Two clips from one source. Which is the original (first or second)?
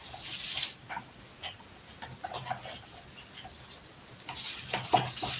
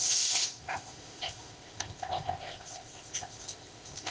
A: first